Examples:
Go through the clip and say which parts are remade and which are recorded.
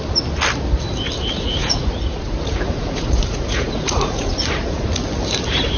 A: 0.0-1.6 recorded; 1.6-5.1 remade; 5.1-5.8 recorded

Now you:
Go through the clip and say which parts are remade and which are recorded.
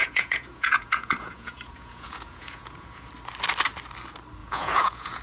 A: 0.0-3.1 remade; 3.1-4.4 recorded; 4.4-5.2 remade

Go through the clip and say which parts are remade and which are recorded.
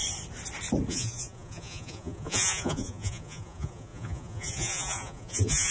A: 0.0-0.9 recorded; 0.9-5.7 remade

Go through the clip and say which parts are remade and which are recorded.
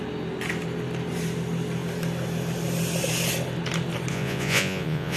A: 0.0-4.1 recorded; 4.1-5.2 remade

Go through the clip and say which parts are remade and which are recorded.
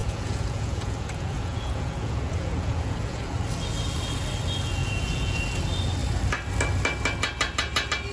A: 0.0-3.4 remade; 3.4-4.8 recorded; 4.8-5.4 remade; 5.4-8.1 recorded